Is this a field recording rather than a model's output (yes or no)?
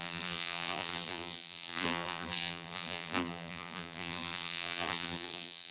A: no